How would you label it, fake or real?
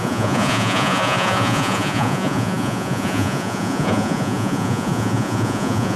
fake